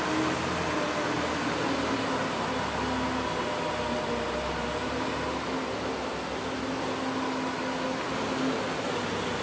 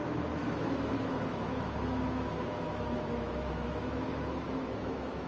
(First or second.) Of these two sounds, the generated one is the second